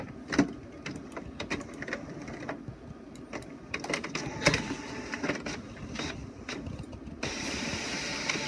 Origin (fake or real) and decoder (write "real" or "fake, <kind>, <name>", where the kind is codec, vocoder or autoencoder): real